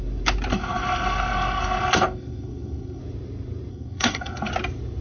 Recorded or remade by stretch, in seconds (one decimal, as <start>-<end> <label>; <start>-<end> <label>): 0.0-0.5 recorded; 0.5-3.0 remade; 3.0-3.7 recorded; 3.7-4.5 remade; 4.5-5.0 recorded